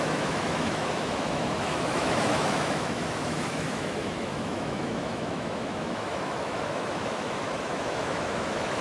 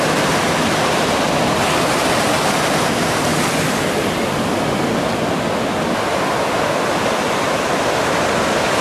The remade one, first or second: first